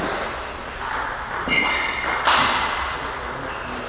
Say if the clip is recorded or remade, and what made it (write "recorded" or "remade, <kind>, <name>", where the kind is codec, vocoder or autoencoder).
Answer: recorded